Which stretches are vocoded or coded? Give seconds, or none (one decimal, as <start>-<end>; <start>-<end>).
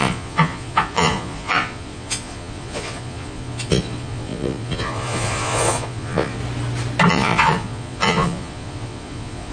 0.0-6.4; 7.1-9.5